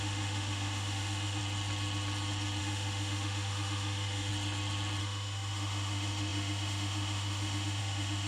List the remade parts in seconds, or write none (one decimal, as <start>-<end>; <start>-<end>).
0.0-1.4; 2.6-4.3; 5.0-8.3